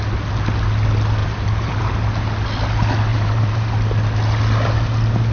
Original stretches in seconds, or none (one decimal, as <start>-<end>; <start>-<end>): 0.0-1.2; 1.8-3.1; 3.7-5.3